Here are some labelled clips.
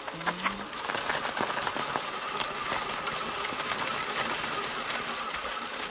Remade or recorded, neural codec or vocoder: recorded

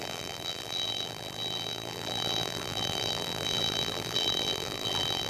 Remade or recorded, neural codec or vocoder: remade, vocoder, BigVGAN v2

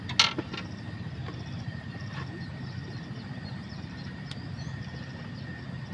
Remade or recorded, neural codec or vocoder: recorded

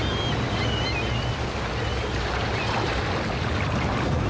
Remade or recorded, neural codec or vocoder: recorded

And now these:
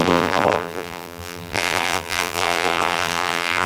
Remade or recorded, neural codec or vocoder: remade, vocoder, BigVGAN v2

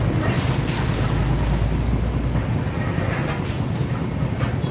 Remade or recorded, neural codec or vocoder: recorded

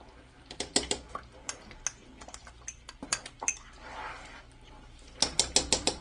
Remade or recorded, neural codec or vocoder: recorded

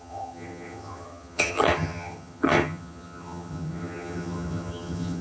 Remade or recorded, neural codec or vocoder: remade, vocoder, HiFi-GAN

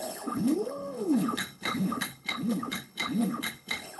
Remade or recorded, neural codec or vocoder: remade, codec, HILCodec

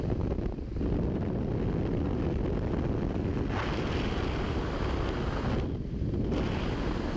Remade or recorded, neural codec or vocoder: recorded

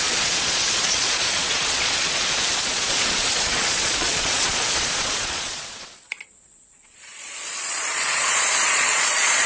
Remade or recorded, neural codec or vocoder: remade, vocoder, Vocos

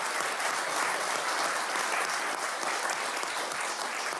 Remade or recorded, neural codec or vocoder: remade, vocoder, BigVGAN v2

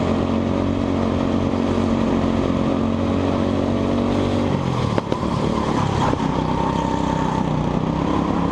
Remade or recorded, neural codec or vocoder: recorded